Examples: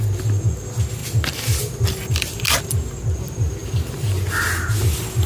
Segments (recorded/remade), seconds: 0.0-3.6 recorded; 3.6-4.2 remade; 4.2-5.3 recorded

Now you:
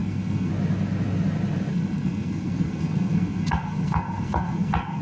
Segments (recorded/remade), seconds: 0.0-0.5 remade; 0.5-1.7 recorded; 1.7-5.0 remade

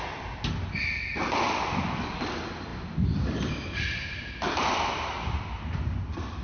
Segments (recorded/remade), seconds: 0.0-6.4 recorded

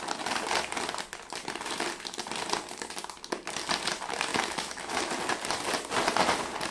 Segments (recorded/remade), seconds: 0.0-4.3 recorded; 4.3-5.1 remade; 5.1-6.7 recorded

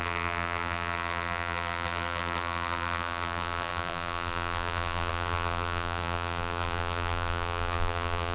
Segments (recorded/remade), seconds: 0.0-8.3 remade